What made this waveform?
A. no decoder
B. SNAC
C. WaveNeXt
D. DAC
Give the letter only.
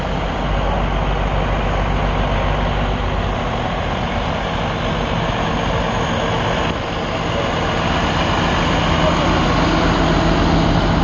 A